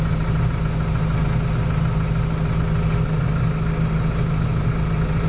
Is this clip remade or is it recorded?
recorded